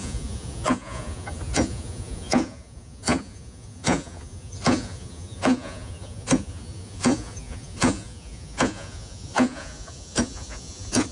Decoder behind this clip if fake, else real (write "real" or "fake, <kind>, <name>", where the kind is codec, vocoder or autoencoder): fake, vocoder, Vocos